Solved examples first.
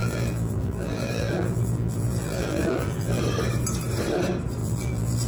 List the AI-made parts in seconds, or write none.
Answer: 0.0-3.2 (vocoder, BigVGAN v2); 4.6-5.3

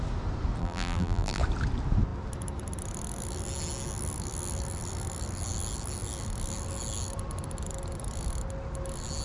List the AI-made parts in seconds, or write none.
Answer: 0.6-1.4 (vocoder, BigVGAN v2)

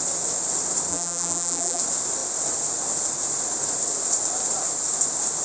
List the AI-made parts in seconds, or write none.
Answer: 0.9-1.8 (vocoder, BigVGAN v2)

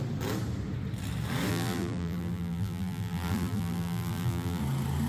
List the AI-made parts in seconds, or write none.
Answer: 1.5-4.6 (vocoder, BigVGAN v2)

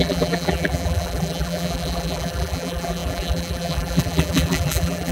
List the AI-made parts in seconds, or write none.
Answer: 0.0-5.1 (vocoder, BigVGAN v2)